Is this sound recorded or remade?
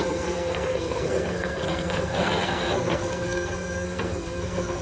remade